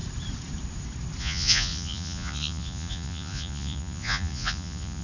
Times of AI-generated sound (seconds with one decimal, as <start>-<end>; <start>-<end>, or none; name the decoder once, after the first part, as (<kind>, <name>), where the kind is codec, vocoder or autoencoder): 1.2-5.0 (vocoder, Vocos)

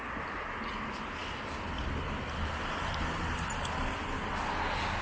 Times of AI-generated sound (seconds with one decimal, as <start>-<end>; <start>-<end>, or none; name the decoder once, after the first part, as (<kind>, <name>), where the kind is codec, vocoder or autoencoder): none

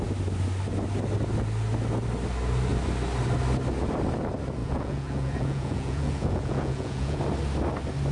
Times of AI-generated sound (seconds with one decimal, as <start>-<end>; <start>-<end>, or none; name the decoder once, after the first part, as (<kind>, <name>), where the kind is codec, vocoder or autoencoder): 4.6-7.2 (vocoder, Vocos)

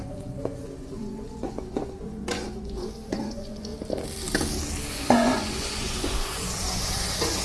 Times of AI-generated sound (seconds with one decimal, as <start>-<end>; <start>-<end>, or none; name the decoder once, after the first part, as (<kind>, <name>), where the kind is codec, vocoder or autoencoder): 0.0-3.7 (vocoder, Vocos); 4.9-7.4

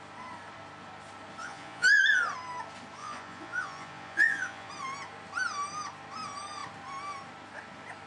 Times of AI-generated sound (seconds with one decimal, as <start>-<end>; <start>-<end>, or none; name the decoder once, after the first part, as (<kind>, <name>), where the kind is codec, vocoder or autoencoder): 1.4-2.0 (vocoder, Vocos); 3.0-4.7

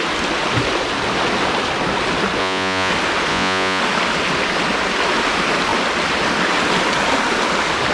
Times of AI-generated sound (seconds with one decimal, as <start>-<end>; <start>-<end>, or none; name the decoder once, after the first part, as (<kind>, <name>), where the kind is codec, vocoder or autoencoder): 2.4-2.9 (vocoder, Vocos); 3.3-3.8